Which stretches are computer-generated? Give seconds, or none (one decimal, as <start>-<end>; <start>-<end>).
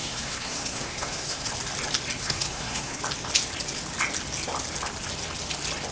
0.0-1.5; 2.2-3.0